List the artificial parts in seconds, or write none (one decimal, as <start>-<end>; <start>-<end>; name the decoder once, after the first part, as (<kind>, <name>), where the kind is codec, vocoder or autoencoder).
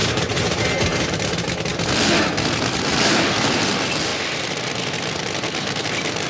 0.0-1.2 (vocoder, BigVGAN v2)